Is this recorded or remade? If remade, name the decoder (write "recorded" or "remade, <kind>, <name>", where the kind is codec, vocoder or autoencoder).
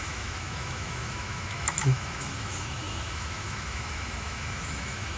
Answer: remade, autoencoder, DAC-VAE